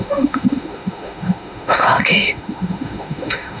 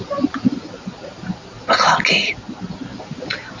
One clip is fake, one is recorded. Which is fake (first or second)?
first